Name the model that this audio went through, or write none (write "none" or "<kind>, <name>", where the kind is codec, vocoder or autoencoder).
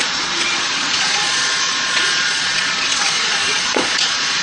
vocoder, Vocos